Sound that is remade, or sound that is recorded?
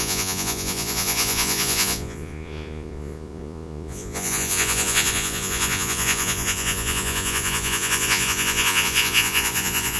remade